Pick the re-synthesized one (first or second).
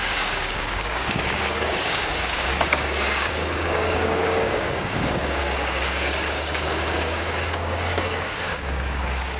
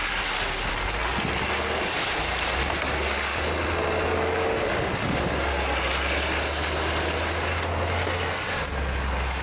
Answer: first